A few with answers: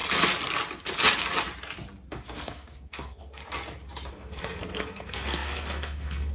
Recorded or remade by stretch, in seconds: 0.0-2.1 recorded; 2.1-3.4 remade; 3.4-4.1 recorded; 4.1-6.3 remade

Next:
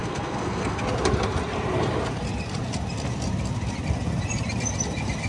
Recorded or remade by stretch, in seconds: 0.0-0.8 remade; 0.8-5.3 recorded

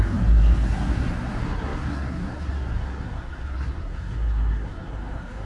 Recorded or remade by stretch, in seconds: 0.0-5.5 remade

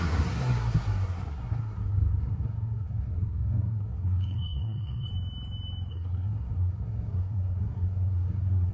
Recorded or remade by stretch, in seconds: 0.0-5.1 remade; 5.1-5.9 recorded; 5.9-8.7 remade